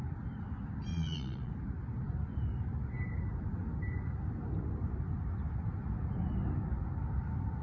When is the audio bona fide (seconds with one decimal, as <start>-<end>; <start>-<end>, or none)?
0.0-0.9; 1.5-7.6